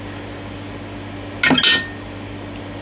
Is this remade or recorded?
recorded